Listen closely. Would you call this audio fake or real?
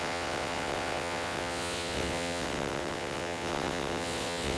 fake